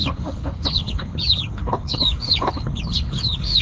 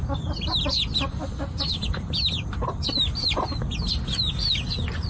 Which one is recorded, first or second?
second